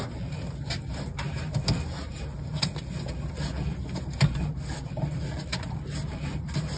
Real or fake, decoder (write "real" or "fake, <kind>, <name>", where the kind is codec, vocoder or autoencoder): real